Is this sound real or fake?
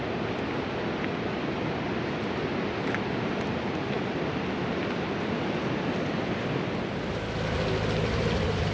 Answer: real